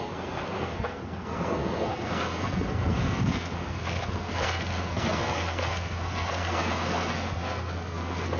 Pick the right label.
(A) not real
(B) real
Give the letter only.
A